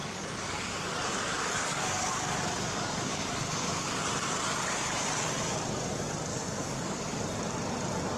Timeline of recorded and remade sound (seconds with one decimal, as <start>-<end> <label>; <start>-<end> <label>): 0.0-4.0 remade; 4.0-6.3 recorded; 6.3-7.2 remade; 7.2-8.2 recorded

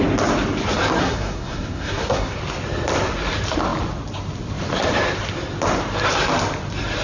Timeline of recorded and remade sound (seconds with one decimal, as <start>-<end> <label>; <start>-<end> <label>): 0.0-1.0 recorded; 1.0-2.4 remade; 2.4-7.0 recorded